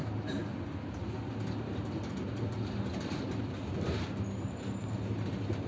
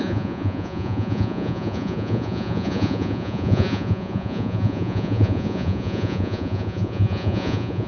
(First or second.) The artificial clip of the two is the second